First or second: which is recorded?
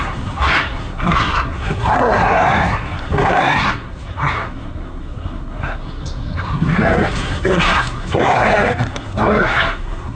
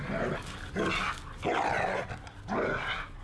second